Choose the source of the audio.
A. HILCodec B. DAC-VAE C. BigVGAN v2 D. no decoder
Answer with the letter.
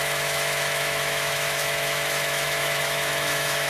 B